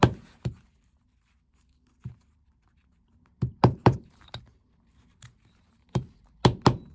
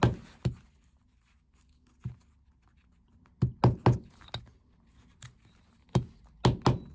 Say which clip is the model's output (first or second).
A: first